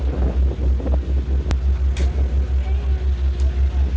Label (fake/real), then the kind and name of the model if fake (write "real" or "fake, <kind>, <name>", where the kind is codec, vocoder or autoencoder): real